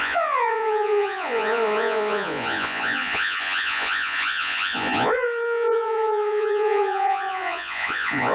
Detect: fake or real fake